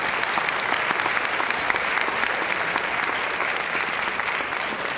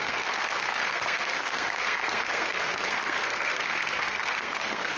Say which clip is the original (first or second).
first